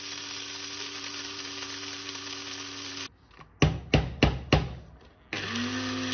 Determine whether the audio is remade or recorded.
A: recorded